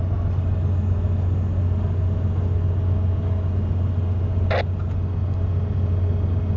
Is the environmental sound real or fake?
real